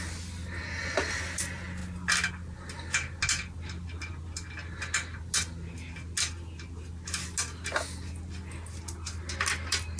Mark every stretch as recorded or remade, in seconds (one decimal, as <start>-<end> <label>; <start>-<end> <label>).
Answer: 0.0-10.0 recorded